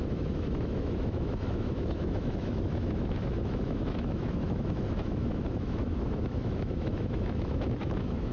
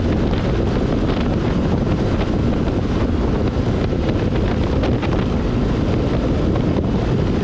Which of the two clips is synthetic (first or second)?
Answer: first